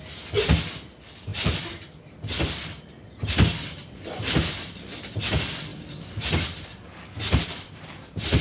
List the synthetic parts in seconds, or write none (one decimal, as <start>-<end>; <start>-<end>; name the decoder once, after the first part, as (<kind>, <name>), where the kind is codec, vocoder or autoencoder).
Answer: 0.0-1.3 (vocoder, BigVGAN v2); 1.9-8.4